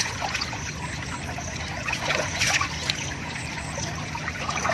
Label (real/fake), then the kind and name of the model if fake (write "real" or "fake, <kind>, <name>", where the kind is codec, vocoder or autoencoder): fake, vocoder, Vocos